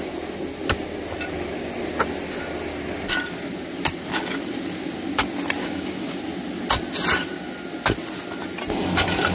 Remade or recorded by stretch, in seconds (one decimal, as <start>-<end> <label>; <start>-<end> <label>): 0.0-5.6 recorded; 5.6-6.2 remade; 6.2-9.3 recorded